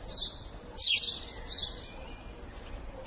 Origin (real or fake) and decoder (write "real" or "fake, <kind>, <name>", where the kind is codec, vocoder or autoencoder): real